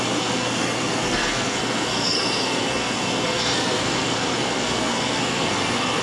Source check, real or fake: fake